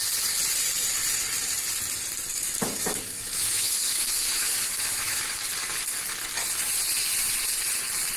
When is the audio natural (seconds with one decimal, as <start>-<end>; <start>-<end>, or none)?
0.0-2.3; 5.4-8.2